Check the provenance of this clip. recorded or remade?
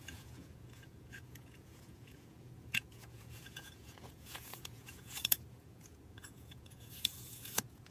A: remade